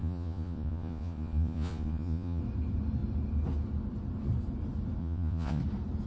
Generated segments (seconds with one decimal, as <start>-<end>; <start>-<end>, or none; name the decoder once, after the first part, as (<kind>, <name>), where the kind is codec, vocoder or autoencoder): 0.0-2.4 (vocoder, Vocos); 5.0-5.6